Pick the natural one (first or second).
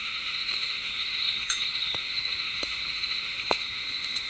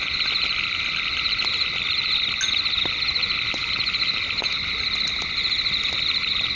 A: second